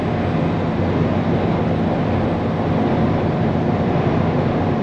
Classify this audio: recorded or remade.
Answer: recorded